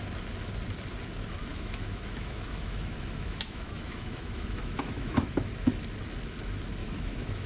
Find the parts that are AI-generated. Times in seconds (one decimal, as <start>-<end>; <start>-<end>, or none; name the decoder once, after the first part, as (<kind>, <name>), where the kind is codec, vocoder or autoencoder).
1.5-5.8 (autoencoder, DAC-VAE); 6.8-7.5